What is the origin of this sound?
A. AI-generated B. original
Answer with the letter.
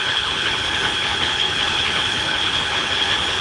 A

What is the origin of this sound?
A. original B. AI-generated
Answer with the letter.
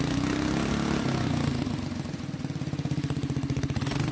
A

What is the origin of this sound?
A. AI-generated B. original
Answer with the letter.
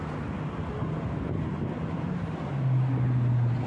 B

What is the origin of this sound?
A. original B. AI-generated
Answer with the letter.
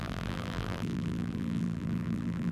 B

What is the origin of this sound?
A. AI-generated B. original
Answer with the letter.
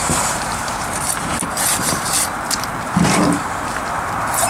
A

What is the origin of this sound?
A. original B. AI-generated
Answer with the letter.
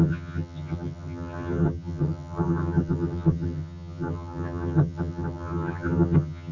B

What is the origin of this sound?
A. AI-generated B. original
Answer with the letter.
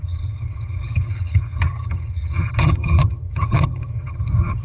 A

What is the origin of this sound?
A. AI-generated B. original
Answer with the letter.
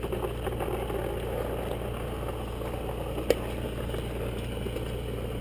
B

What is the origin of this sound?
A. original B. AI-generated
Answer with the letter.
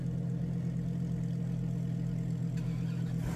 A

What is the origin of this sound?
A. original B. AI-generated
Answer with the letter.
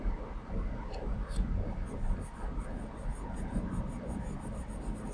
A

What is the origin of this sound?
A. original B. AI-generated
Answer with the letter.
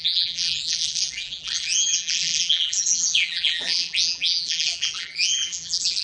B